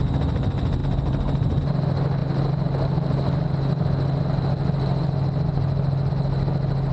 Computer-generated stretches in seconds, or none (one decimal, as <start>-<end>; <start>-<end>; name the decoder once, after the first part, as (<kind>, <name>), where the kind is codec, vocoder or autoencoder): none